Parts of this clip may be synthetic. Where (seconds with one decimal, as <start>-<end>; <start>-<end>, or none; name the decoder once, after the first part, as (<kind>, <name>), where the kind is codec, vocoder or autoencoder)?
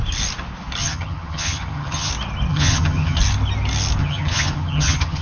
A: 0.8-2.1 (vocoder, HiFi-GAN); 2.5-3.2; 4.0-5.2